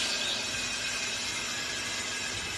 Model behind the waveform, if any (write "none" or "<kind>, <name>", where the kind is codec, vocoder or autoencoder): none